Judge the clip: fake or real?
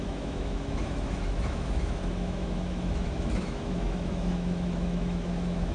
fake